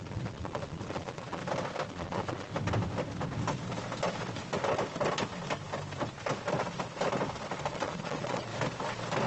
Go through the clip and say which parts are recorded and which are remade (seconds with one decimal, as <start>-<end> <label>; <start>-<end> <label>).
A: 0.0-1.4 remade; 1.4-1.9 recorded; 1.9-2.5 remade; 2.5-7.7 recorded; 7.7-8.5 remade; 8.5-9.3 recorded